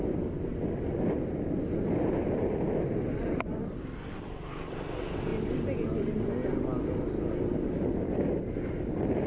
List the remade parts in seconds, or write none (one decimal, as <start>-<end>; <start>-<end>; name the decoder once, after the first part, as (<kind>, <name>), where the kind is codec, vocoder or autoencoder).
none